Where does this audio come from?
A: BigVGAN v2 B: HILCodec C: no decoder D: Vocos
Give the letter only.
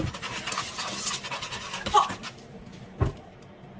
C